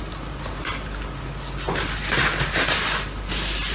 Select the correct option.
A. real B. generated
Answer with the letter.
A